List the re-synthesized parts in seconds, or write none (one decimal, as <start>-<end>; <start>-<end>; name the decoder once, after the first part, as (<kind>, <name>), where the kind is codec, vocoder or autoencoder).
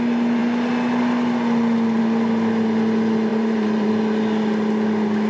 3.3-3.9 (vocoder, BigVGAN v2)